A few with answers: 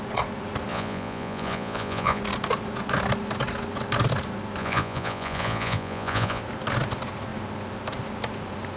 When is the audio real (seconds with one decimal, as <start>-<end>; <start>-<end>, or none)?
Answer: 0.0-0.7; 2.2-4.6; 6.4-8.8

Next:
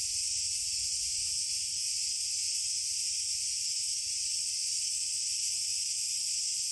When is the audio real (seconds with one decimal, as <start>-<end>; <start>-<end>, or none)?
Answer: 0.0-4.3; 5.2-6.7

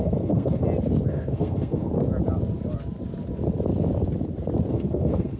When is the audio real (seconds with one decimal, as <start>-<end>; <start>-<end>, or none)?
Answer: 0.6-1.1; 1.9-4.7

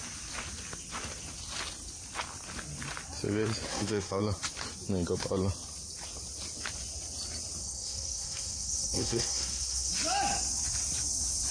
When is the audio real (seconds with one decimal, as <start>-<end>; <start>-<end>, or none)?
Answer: 0.0-3.7; 4.2-7.6; 9.9-11.5

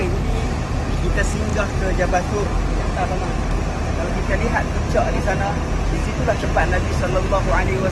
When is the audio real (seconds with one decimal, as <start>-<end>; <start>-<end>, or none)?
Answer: 0.0-7.9